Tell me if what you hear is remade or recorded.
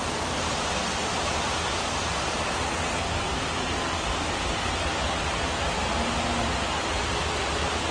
recorded